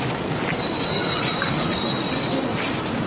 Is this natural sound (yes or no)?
yes